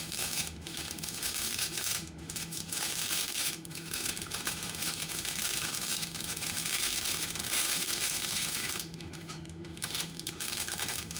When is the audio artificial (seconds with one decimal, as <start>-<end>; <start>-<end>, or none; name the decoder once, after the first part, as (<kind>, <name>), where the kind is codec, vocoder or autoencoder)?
0.0-11.2 (autoencoder, DAC-VAE)